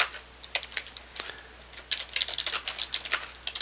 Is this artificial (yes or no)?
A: no